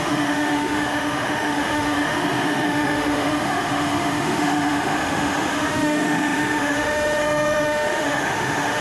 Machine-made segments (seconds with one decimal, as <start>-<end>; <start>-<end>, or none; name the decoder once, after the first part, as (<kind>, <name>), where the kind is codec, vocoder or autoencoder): 0.0-8.8 (autoencoder, DAC-VAE)